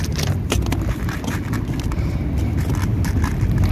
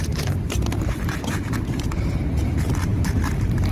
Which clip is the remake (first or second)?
second